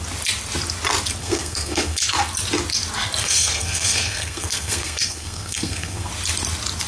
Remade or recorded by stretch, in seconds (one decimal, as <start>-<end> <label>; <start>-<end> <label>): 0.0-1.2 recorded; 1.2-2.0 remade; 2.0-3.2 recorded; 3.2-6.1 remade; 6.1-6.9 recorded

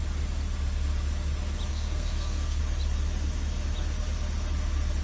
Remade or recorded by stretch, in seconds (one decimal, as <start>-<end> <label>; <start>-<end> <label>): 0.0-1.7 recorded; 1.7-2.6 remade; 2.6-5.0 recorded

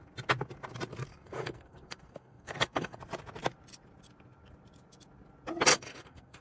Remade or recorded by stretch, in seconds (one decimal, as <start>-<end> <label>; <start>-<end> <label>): 0.0-1.1 recorded; 1.1-3.0 remade; 3.0-5.7 recorded; 5.7-6.4 remade

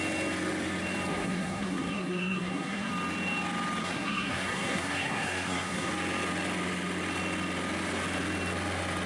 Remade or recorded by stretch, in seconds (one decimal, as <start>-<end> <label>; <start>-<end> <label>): 0.0-1.1 recorded; 1.1-2.9 remade; 2.9-3.8 recorded; 3.8-5.9 remade; 5.9-9.1 recorded

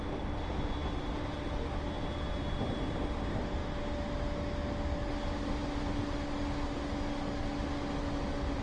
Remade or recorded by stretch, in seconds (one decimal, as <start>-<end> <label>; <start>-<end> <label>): 0.0-8.6 recorded

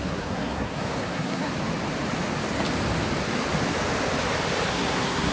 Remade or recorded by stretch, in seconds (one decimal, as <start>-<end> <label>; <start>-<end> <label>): 0.0-1.5 remade; 1.5-4.7 recorded; 4.7-5.3 remade